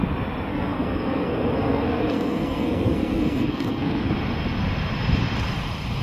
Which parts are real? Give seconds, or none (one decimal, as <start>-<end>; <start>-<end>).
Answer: 0.0-0.5; 4.1-6.0